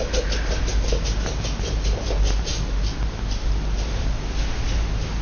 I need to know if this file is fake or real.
real